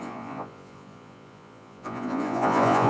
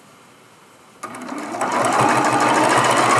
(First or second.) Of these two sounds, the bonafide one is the second